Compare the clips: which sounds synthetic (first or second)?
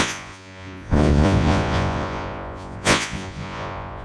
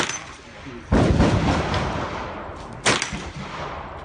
first